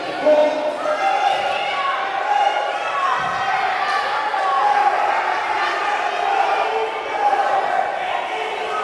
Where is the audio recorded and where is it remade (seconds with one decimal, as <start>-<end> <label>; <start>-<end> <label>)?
0.0-8.8 recorded